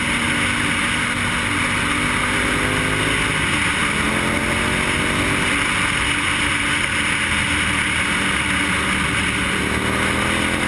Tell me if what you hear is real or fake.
real